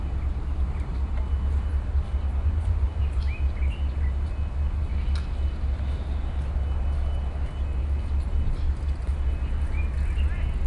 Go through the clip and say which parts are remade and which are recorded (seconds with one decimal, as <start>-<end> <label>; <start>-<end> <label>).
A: 0.0-2.4 recorded; 2.4-3.0 remade; 3.0-10.7 recorded